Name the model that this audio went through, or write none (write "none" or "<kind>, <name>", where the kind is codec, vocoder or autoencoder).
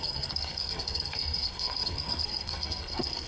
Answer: codec, SNAC